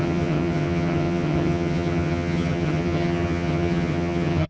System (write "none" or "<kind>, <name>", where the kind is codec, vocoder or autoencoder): vocoder, HiFi-GAN